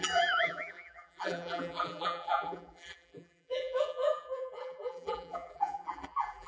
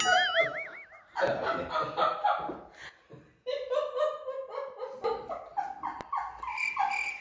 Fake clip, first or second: first